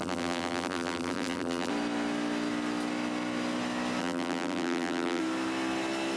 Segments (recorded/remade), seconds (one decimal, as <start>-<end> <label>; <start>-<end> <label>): 0.0-1.7 remade; 1.7-4.0 recorded; 4.0-5.2 remade; 5.2-6.2 recorded